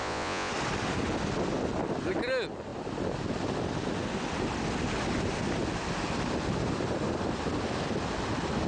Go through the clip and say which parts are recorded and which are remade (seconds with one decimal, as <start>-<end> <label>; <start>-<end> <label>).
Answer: 0.0-0.5 remade; 0.5-8.7 recorded